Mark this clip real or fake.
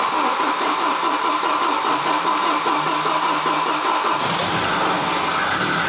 real